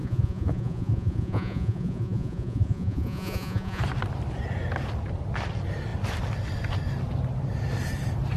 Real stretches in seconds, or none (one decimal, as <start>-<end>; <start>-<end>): 3.8-8.4